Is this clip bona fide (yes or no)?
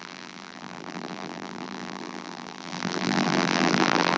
no